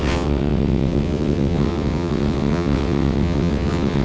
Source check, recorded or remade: remade